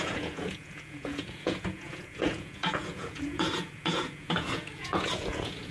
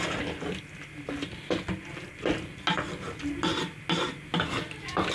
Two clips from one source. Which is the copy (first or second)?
first